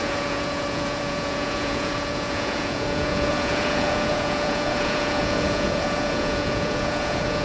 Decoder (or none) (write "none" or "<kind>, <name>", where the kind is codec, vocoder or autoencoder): vocoder, Vocos